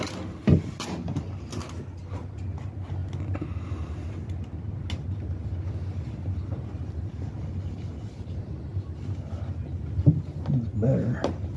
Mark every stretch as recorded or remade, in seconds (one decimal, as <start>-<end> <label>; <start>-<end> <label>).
0.0-11.6 recorded